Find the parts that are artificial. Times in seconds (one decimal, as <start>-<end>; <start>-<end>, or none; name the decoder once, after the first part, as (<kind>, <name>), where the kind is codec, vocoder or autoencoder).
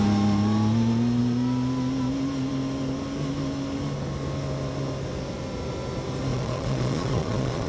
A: 6.3-7.7 (vocoder, Vocos)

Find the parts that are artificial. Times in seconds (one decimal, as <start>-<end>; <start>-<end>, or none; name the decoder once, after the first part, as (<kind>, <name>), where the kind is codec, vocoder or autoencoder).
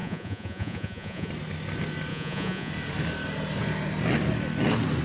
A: 0.0-1.3 (vocoder, Vocos); 2.1-2.7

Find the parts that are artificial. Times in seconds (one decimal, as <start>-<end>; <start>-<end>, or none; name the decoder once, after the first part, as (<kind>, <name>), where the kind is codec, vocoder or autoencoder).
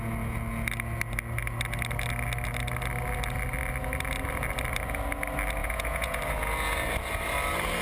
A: 5.6-6.2 (vocoder, Vocos)